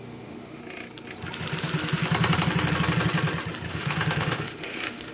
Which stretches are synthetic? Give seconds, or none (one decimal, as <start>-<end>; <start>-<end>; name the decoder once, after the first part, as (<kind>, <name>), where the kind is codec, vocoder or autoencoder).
0.0-0.6 (autoencoder, DAC-VAE); 3.7-5.1